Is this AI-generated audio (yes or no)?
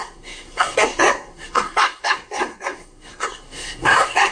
yes